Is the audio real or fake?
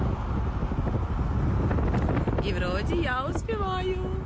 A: real